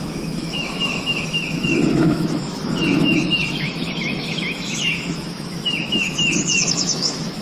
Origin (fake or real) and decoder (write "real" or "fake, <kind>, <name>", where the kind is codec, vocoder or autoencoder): fake, autoencoder, DAC-VAE